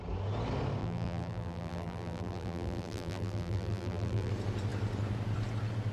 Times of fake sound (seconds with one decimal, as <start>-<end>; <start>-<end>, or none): 0.8-4.3